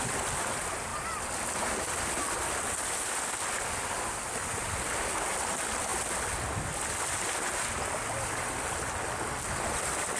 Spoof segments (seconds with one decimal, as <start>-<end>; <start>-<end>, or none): none